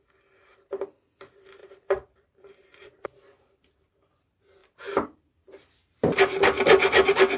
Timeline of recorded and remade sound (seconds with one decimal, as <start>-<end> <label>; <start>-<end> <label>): 0.0-1.6 recorded; 1.6-3.7 remade; 3.7-4.6 recorded; 4.6-5.7 remade; 5.7-7.4 recorded